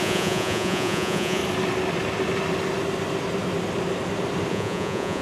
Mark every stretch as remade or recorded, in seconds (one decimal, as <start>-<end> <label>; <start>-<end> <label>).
0.0-1.4 remade; 1.4-4.5 recorded; 4.5-5.2 remade